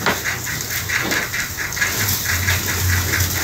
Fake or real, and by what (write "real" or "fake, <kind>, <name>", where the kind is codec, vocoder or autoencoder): real